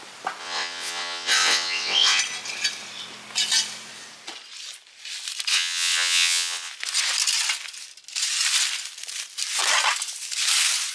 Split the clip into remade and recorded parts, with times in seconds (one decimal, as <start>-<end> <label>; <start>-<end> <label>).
0.0-0.4 recorded; 0.4-2.2 remade; 2.2-5.5 recorded; 5.5-6.7 remade; 6.7-10.9 recorded